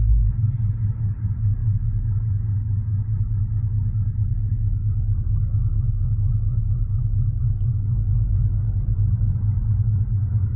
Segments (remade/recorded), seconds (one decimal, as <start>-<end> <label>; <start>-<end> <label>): 0.0-1.6 recorded; 1.6-2.2 remade; 2.2-10.6 recorded